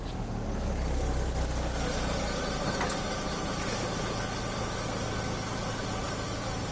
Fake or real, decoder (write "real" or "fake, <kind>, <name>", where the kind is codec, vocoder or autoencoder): real